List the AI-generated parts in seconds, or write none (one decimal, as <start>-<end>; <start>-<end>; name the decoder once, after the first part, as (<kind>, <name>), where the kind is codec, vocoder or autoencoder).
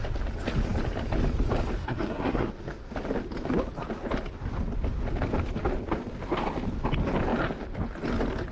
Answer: 1.8-2.5 (codec, SNAC)